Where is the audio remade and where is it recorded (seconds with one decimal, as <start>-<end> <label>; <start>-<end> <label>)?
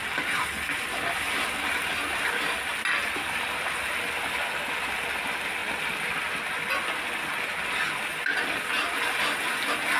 0.0-10.0 recorded